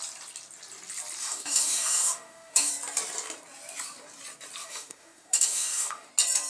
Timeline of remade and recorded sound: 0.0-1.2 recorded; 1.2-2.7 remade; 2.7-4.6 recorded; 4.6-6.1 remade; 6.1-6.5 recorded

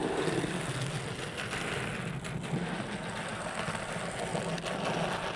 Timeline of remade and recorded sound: 0.0-5.4 recorded